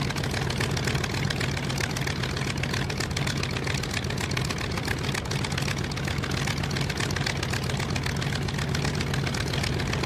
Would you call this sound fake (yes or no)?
no